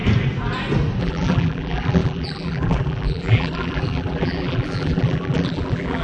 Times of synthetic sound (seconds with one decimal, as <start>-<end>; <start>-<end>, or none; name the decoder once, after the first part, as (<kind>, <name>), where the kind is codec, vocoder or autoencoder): 1.0-6.0 (vocoder, BigVGAN v2)